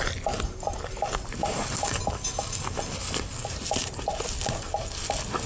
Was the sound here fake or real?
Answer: real